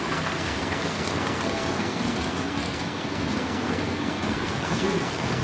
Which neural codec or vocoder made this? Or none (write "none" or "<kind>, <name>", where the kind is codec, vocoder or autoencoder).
codec, SNAC